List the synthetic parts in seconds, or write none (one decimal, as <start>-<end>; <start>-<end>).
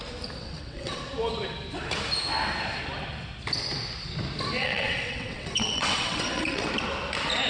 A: 0.4-1.0; 4.6-6.7